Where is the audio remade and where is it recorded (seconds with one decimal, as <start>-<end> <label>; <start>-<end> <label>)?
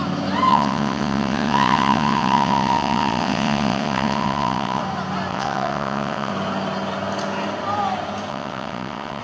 0.0-0.5 recorded; 0.5-4.8 remade; 4.8-5.3 recorded; 5.3-6.3 remade; 6.3-8.3 recorded; 8.3-9.2 remade